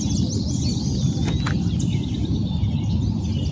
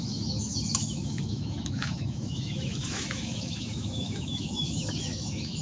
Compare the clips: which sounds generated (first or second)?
second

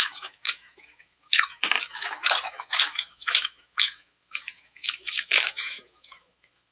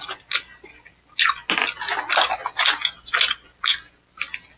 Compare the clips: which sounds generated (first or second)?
first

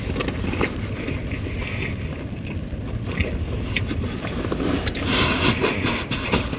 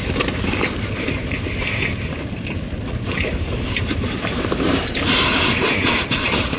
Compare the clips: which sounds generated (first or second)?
second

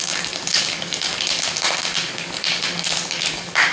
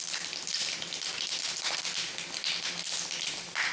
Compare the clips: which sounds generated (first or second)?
first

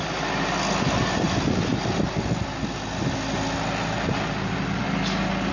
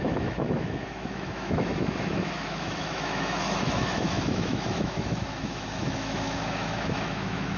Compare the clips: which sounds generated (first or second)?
second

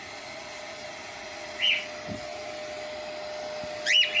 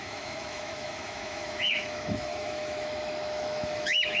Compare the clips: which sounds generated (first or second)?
second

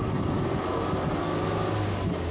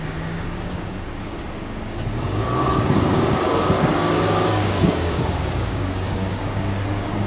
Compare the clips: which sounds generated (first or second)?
second